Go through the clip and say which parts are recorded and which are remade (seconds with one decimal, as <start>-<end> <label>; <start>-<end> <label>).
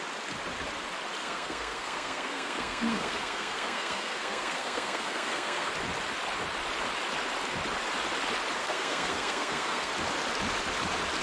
0.0-1.2 recorded; 1.2-5.7 remade; 5.7-8.6 recorded; 8.6-9.9 remade; 9.9-11.2 recorded